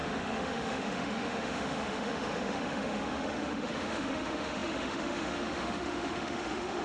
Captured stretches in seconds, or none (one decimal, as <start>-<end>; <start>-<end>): none